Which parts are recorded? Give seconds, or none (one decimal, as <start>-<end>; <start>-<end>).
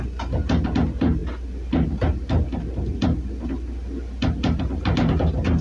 0.0-5.6